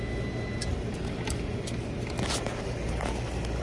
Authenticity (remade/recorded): recorded